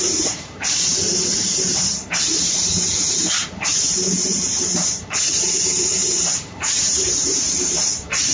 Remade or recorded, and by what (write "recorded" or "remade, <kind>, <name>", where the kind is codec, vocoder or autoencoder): remade, vocoder, BigVGAN v2